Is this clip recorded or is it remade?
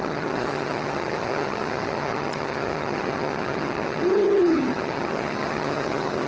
remade